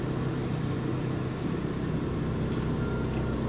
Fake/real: real